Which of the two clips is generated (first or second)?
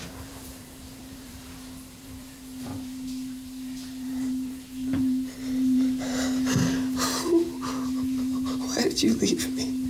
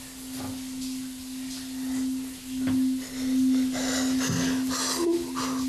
first